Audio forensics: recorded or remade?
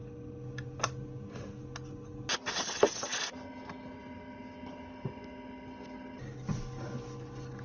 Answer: recorded